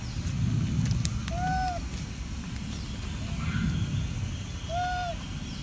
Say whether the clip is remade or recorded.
recorded